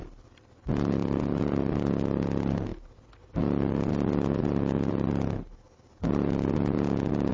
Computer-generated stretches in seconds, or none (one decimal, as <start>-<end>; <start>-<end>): 1.0-1.5